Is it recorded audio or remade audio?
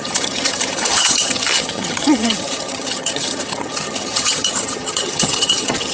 remade